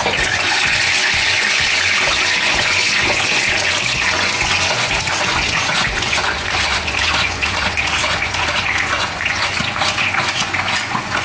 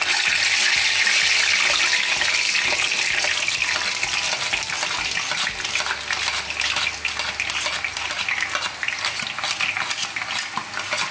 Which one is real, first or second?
second